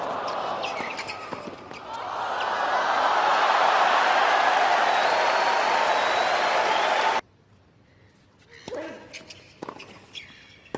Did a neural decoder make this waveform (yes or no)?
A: no